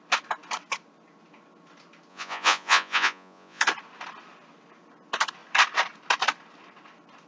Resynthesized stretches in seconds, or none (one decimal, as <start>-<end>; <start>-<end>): 2.1-3.6